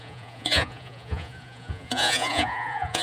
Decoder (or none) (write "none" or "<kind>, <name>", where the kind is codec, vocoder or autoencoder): vocoder, Vocos